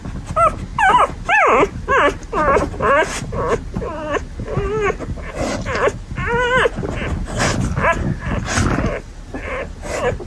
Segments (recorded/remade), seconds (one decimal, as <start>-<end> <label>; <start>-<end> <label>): 0.0-10.3 recorded